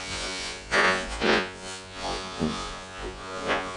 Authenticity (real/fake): fake